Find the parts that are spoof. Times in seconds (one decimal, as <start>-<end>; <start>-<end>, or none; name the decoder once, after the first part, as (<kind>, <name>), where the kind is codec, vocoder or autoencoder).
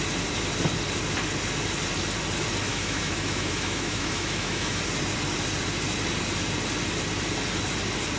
2.7-4.8 (autoencoder, DAC-VAE)